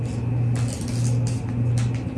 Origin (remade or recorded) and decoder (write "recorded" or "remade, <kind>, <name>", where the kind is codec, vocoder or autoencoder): recorded